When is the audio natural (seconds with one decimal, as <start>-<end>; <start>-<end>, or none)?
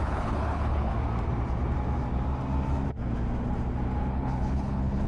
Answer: 0.9-4.0